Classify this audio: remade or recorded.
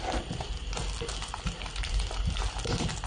recorded